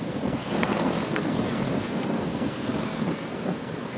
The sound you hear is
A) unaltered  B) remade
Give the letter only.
B